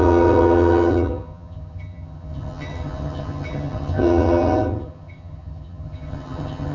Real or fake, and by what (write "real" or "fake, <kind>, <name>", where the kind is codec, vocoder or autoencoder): fake, vocoder, HiFi-GAN